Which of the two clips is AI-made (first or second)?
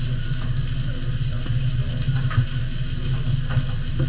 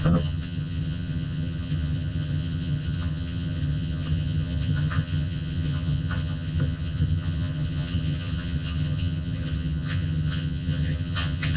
second